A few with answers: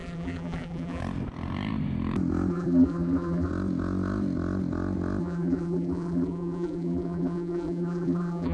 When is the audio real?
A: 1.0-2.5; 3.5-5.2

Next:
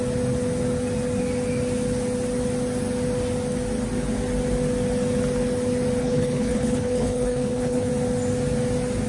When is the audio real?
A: 0.0-6.0; 7.9-9.1

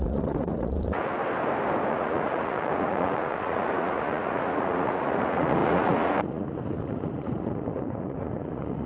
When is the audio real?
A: 1.2-1.9

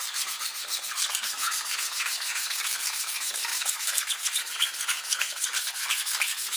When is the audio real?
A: none

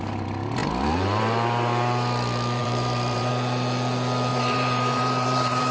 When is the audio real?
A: 0.0-0.6; 1.2-2.6; 3.3-4.3